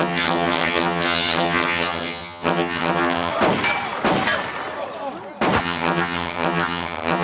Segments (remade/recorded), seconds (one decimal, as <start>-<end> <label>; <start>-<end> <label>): 0.0-3.3 remade; 3.3-5.6 recorded; 5.6-7.2 remade